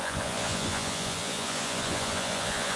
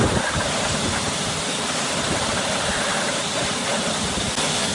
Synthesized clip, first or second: first